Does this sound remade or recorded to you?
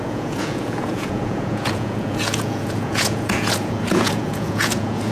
remade